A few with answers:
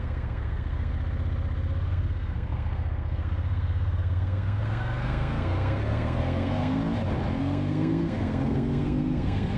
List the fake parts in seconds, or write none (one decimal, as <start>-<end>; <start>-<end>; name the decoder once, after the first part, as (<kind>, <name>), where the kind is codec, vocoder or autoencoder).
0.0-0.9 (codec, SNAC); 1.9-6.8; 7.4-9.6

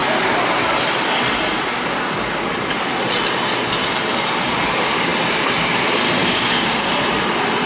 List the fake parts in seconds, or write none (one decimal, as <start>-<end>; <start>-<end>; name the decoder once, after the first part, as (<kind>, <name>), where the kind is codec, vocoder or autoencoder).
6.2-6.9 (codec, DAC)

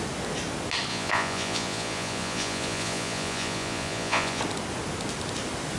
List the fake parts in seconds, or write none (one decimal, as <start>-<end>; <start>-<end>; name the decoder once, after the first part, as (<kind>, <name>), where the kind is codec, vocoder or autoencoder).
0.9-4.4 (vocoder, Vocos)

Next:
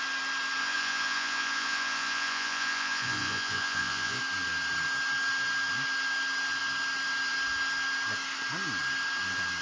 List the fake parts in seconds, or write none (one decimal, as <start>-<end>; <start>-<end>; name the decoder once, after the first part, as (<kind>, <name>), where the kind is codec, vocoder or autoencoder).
0.6-4.2 (vocoder, Vocos)

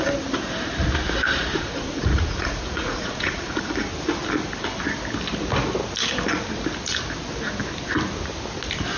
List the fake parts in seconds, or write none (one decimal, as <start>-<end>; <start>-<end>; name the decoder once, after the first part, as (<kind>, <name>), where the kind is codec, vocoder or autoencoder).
1.5-3.7 (vocoder, Vocos)

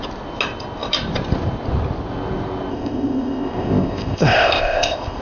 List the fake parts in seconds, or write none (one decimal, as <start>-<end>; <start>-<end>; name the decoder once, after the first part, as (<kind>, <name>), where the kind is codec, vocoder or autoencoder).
2.7-5.2 (codec, ZipCodec)

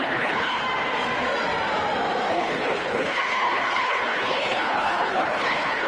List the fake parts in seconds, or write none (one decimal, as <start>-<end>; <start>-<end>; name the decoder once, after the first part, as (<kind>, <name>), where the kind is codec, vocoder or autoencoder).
0.0-0.6 (codec, HILCodec); 2.3-5.9